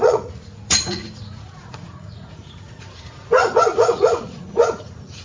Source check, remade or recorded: remade